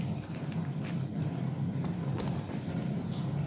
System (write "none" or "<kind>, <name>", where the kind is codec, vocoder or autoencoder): none